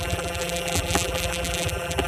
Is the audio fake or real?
fake